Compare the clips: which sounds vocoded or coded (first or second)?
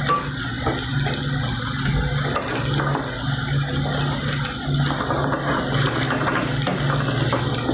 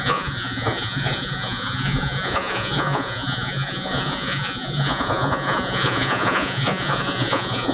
second